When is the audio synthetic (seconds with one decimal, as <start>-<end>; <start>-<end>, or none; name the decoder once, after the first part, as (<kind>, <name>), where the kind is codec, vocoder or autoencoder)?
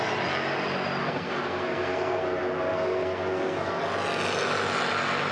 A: 1.0-3.8 (codec, SNAC)